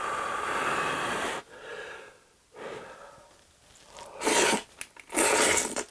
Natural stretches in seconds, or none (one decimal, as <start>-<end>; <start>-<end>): 0.0-5.9